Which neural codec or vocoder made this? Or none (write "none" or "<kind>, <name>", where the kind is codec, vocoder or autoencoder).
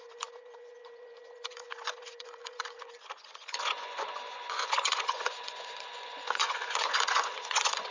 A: vocoder, Vocos